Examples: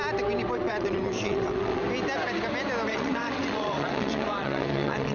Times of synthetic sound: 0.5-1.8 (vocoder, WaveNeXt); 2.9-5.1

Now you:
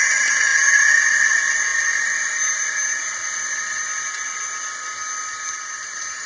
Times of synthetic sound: none

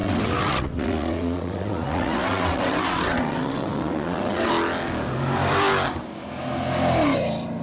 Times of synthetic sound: 0.0-4.5 (vocoder, WaveNeXt)

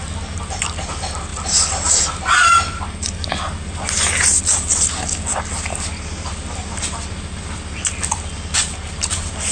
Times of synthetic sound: none

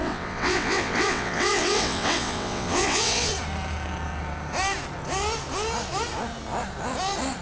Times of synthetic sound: 0.0-3.3 (vocoder, WaveNeXt)

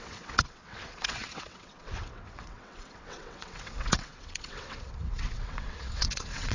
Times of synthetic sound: 0.0-6.5 (vocoder, WaveNeXt)

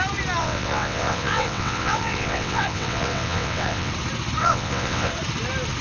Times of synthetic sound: 0.4-3.9 (vocoder, WaveNeXt); 4.4-5.1

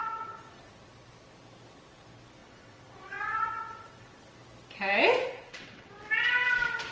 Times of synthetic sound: 0.0-0.7 (vocoder, WaveNeXt); 2.4-4.3; 5.3-5.9